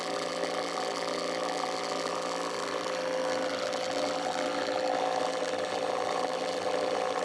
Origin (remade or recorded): remade